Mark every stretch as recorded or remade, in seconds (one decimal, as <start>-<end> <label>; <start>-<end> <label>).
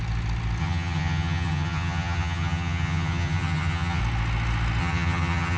0.0-0.6 recorded; 0.6-4.0 remade; 4.0-4.8 recorded; 4.8-5.6 remade